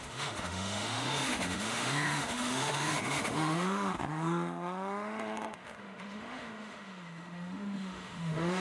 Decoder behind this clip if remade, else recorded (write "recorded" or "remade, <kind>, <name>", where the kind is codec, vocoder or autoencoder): remade, autoencoder, DAC-VAE